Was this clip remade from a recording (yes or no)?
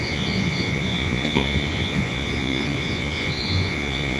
yes